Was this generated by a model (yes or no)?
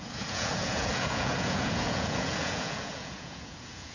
yes